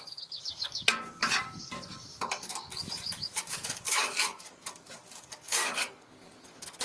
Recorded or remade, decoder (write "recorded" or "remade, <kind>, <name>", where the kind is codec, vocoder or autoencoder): remade, codec, DAC